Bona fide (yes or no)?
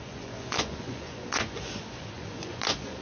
no